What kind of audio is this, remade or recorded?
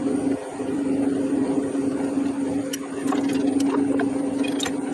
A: recorded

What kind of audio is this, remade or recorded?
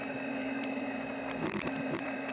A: remade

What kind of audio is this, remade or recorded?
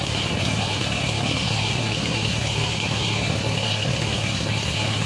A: remade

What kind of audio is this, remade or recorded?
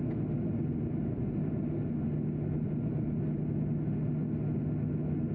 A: recorded